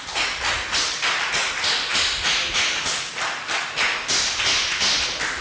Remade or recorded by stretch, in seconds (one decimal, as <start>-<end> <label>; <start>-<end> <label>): 0.0-5.4 recorded